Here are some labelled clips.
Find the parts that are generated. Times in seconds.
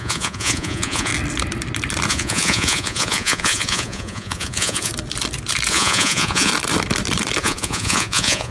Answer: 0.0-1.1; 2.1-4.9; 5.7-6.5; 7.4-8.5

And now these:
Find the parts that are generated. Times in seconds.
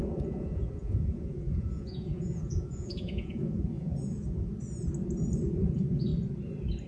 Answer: 0.0-4.5; 5.4-6.1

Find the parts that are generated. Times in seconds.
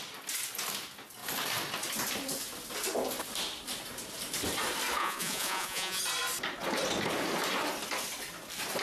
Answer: 5.0-6.0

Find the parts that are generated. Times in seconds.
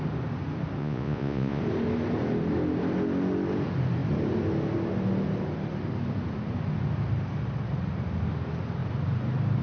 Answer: 0.8-1.6